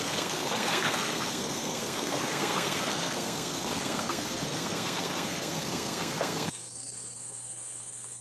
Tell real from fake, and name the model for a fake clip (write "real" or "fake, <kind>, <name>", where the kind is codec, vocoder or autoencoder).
fake, codec, SNAC